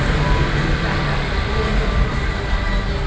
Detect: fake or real real